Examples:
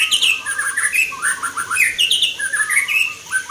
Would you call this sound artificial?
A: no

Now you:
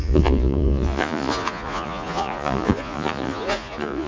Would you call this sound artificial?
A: yes